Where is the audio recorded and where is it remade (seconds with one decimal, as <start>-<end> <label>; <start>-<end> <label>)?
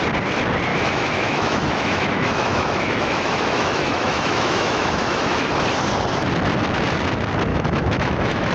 0.0-0.7 recorded; 0.7-5.5 remade; 5.5-7.5 recorded; 7.5-8.5 remade